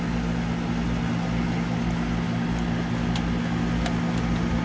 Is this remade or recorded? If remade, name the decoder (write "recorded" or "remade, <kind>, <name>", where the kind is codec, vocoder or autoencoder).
recorded